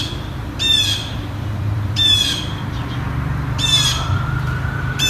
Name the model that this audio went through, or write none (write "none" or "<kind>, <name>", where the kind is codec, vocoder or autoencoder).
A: vocoder, BigVGAN v2